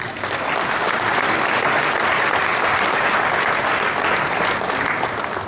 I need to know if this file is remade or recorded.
recorded